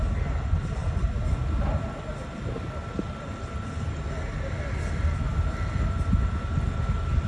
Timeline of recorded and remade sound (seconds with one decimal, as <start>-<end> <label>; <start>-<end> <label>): 0.0-7.3 recorded